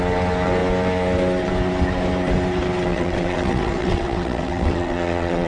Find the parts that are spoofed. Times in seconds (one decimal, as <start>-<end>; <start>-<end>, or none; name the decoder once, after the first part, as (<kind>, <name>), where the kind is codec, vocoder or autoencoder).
2.9-5.5 (vocoder, WaveNeXt)